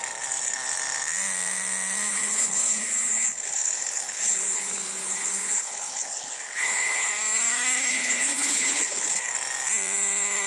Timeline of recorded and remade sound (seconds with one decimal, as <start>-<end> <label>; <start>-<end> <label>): 0.0-2.1 recorded; 2.1-7.1 remade; 7.1-7.9 recorded; 7.9-9.3 remade; 9.3-10.5 recorded